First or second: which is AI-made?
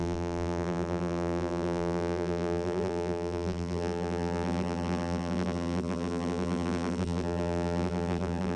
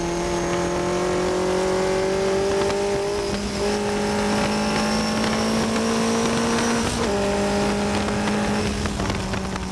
first